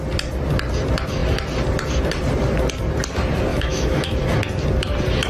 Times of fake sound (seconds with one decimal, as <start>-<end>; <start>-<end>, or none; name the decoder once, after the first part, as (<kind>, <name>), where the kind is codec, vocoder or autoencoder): 3.5-4.1 (autoencoder, DAC-VAE)